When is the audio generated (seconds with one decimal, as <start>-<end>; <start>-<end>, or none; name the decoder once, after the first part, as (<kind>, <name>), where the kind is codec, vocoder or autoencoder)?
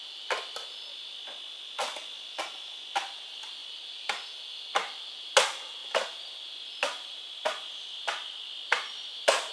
none